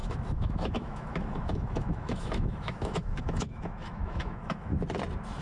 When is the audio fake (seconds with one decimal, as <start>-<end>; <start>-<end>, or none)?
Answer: 0.0-4.7